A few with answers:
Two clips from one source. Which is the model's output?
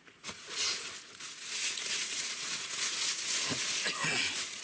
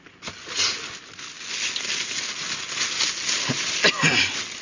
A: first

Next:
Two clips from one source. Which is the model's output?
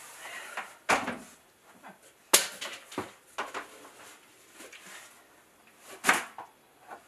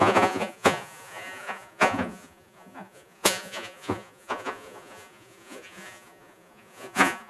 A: second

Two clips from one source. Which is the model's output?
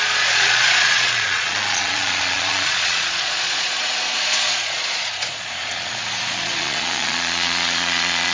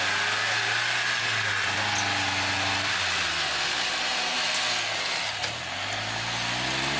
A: first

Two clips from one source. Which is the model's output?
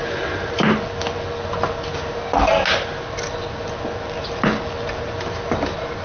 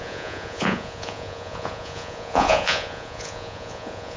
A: second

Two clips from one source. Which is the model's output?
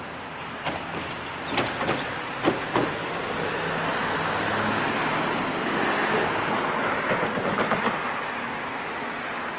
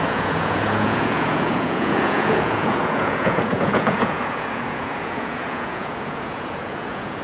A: second